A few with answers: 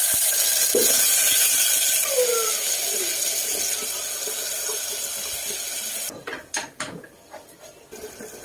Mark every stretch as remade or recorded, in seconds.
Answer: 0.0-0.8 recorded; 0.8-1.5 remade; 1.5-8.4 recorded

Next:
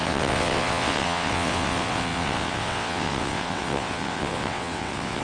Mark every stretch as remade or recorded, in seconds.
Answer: 0.0-5.2 remade